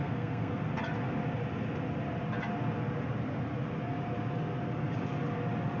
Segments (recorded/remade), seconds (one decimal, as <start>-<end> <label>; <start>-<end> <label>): 0.0-0.8 remade; 0.8-5.8 recorded